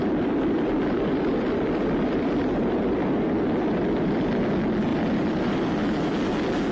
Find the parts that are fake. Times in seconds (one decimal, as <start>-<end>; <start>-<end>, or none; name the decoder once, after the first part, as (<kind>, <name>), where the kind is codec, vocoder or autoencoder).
0.0-3.8 (vocoder, BigVGAN v2); 4.9-6.1